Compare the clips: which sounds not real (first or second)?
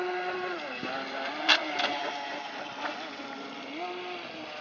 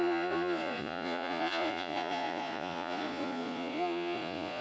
second